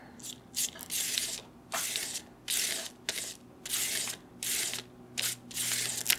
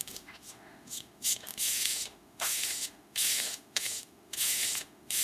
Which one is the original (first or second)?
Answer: first